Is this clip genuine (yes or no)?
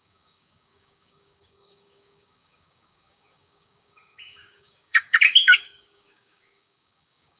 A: no